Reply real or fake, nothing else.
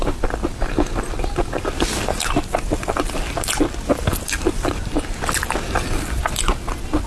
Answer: real